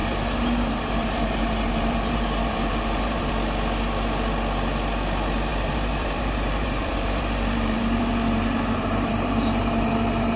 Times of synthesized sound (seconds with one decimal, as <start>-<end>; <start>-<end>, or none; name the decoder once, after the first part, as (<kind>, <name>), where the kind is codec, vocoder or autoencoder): 0.0-3.3 (vocoder, BigVGAN v2); 5.5-10.4